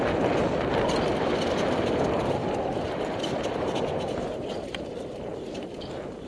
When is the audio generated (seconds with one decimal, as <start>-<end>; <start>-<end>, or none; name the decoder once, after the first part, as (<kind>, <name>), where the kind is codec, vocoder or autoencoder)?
2.4-6.3 (vocoder, BigVGAN v2)